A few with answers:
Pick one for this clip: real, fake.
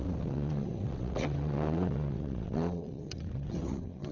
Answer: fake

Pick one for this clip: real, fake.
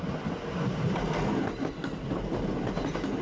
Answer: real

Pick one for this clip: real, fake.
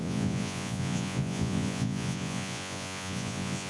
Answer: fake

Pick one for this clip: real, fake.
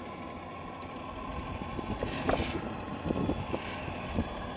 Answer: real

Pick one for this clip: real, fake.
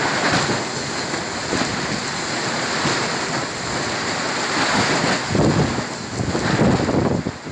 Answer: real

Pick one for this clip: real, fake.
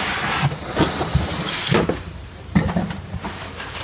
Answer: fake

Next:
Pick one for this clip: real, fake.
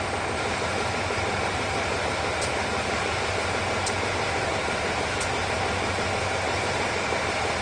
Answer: real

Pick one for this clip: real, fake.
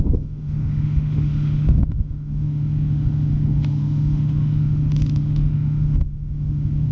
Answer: fake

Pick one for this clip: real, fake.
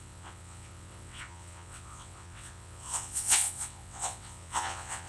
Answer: fake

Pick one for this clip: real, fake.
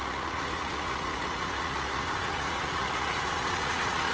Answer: fake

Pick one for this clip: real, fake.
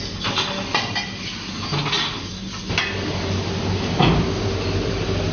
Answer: real